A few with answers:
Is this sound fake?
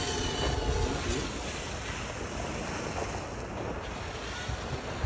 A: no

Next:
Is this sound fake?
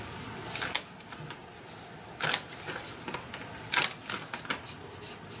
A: no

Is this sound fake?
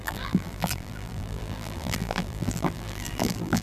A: yes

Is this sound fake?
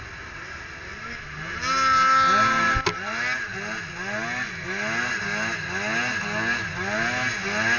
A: no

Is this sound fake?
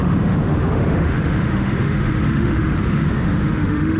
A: yes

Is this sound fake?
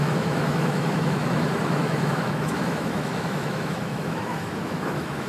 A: yes